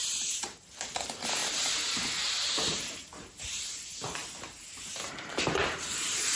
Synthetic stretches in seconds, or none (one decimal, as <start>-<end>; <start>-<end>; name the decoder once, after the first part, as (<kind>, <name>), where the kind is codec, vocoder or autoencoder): 0.0-4.2 (vocoder, BigVGAN v2); 5.3-6.4